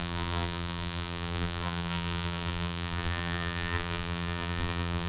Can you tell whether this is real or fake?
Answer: fake